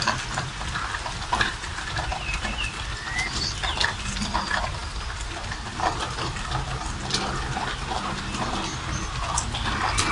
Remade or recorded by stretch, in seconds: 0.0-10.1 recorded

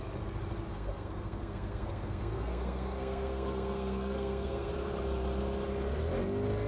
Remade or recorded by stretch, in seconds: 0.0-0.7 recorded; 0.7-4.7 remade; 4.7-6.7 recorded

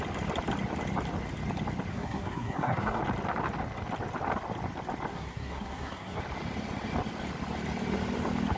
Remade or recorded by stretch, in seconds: 0.0-1.9 recorded; 1.9-3.0 remade; 3.0-5.1 recorded; 5.1-6.2 remade; 6.2-8.6 recorded